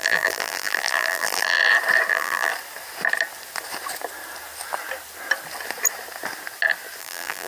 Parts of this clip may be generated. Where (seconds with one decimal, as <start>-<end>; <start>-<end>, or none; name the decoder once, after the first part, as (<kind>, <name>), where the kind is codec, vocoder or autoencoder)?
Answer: 0.0-1.6 (vocoder, BigVGAN v2); 2.1-2.5; 7.0-7.5